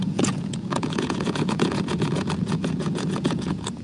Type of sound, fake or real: fake